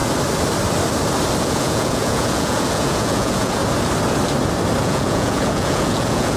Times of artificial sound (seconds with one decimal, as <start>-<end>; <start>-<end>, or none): 1.4-3.6; 4.8-6.4